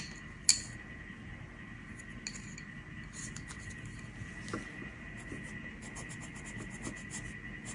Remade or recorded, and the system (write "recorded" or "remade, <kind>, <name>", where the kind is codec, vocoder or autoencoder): recorded